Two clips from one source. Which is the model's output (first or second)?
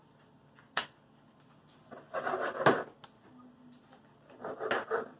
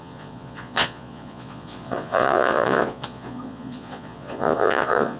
second